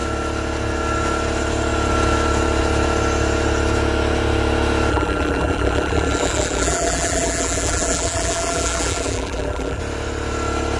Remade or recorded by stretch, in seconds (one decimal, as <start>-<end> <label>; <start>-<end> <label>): 0.0-4.9 recorded; 4.9-9.8 remade; 9.8-10.8 recorded